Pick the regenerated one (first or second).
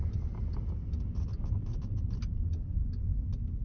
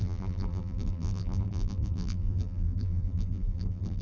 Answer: second